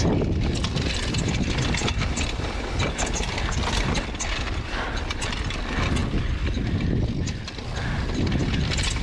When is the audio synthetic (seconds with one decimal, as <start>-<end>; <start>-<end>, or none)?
none